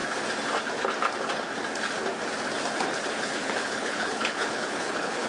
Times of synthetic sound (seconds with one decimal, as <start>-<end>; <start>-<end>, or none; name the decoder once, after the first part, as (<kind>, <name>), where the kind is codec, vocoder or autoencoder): 3.2-5.3 (codec, HILCodec)